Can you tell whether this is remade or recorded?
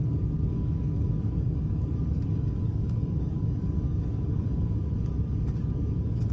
remade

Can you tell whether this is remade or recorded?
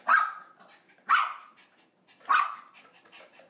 recorded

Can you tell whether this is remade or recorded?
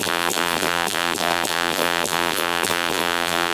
remade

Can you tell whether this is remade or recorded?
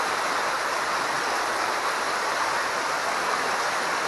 recorded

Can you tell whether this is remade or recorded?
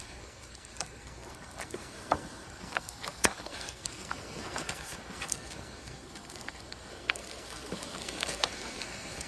remade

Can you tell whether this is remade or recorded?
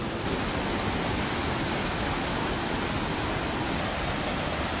recorded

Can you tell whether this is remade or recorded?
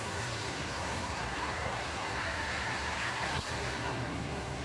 remade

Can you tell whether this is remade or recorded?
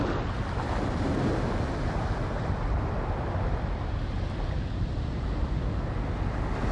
recorded